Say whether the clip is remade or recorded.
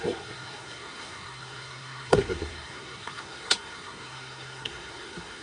remade